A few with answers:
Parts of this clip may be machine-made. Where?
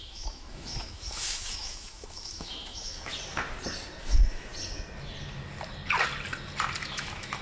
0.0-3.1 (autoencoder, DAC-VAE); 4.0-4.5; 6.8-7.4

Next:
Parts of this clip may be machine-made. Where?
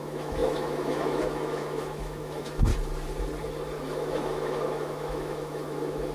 0.0-2.7 (autoencoder, DAC-VAE); 3.9-6.1